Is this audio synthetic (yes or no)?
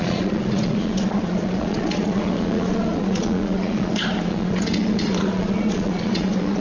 yes